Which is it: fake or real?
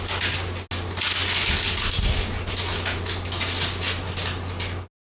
real